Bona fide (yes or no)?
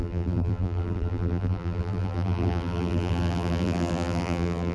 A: no